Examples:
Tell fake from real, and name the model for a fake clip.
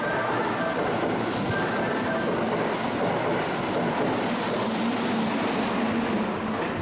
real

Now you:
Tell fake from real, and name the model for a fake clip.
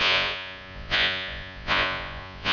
fake, vocoder, Vocos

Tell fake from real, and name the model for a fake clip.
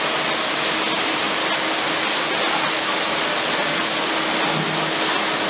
real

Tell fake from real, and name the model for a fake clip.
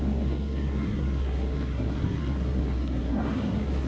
fake, codec, SNAC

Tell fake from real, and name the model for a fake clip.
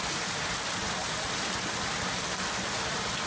real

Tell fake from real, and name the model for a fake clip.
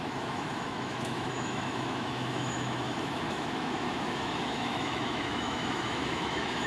fake, autoencoder, DAC-VAE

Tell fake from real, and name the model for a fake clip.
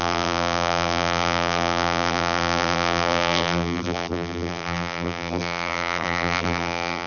fake, vocoder, BigVGAN v2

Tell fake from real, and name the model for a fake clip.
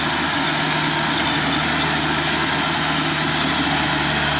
real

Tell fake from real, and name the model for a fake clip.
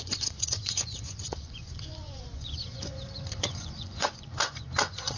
fake, vocoder, Vocos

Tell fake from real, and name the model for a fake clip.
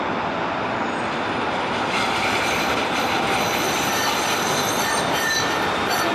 fake, vocoder, BigVGAN v2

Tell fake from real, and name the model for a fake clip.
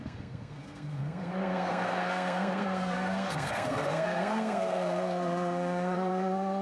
fake, codec, SNAC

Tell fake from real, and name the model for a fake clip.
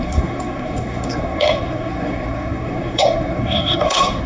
fake, codec, SNAC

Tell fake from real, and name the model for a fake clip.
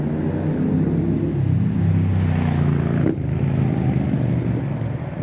real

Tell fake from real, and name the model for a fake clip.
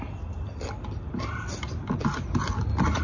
real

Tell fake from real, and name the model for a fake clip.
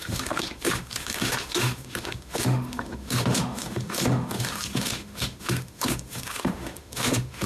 fake, autoencoder, DAC-VAE